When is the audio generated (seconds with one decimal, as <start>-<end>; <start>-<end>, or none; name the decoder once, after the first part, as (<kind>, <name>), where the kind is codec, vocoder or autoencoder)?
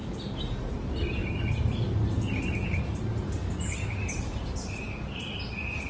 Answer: 1.2-2.8 (vocoder, BigVGAN v2); 3.4-4.5